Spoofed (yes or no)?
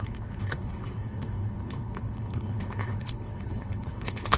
yes